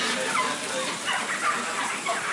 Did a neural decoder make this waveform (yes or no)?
no